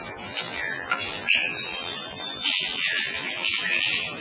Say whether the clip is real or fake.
fake